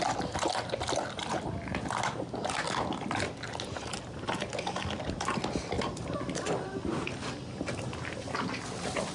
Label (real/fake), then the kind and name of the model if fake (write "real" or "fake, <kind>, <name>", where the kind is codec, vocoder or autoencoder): real